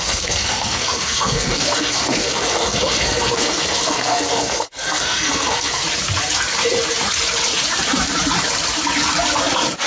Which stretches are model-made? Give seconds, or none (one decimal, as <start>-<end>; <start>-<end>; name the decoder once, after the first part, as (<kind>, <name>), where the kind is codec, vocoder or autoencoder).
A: 0.0-5.8 (codec, SNAC)